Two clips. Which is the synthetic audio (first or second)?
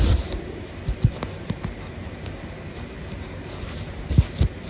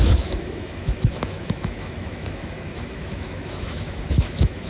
second